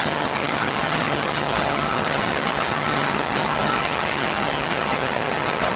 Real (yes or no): no